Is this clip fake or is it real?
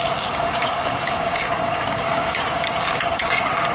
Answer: fake